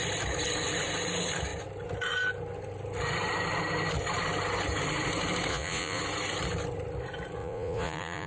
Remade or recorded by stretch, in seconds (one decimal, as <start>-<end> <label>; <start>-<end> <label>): 0.0-5.5 recorded; 5.5-6.0 remade; 6.0-7.4 recorded; 7.4-8.3 remade